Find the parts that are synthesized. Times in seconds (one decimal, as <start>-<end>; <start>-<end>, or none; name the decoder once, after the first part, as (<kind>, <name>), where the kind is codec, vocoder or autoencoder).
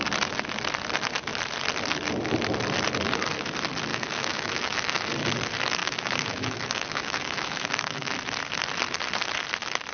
3.9-5.0 (autoencoder, DAC-VAE); 5.8-8.1